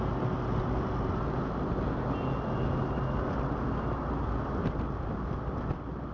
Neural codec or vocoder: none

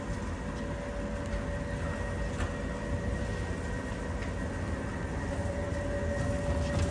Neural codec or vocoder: none